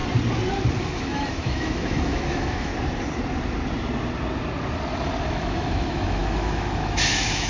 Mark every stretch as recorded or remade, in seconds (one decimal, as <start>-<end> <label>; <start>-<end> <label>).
0.0-0.8 recorded; 0.8-2.7 remade; 2.7-5.3 recorded; 5.3-7.5 remade